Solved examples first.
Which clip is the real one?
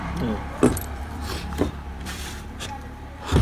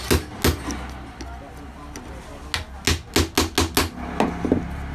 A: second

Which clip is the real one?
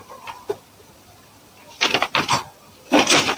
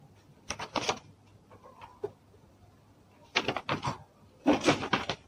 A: second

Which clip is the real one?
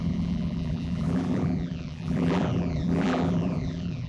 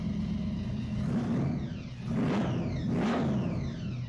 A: second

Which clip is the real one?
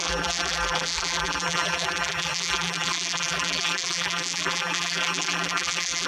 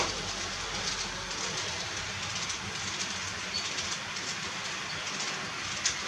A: second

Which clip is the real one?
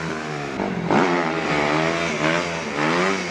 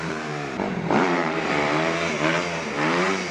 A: first